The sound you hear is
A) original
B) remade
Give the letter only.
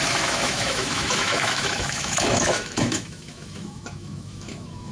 B